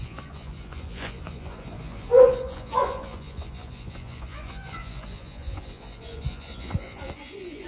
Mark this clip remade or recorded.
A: remade